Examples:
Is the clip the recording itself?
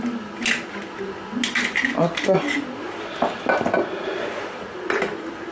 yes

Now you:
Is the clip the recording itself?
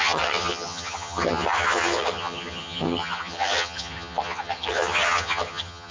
no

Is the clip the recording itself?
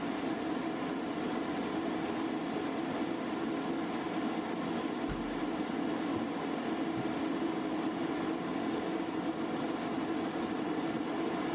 yes